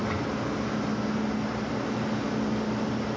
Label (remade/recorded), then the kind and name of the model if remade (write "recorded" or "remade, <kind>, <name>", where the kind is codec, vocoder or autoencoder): recorded